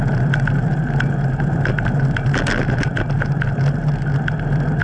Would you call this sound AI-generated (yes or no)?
no